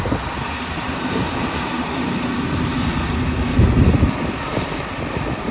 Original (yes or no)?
yes